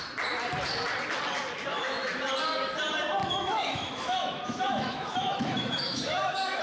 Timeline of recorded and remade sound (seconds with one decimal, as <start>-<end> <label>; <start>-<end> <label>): 0.0-1.7 recorded; 1.7-2.2 remade; 2.2-3.2 recorded; 3.2-6.6 remade